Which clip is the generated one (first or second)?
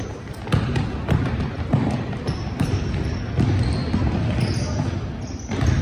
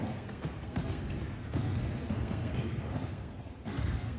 second